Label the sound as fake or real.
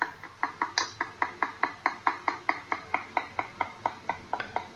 real